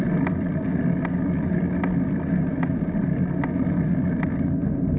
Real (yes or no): yes